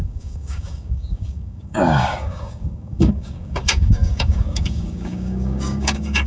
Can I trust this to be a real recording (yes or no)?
no